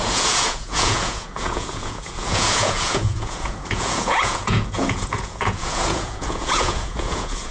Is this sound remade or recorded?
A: remade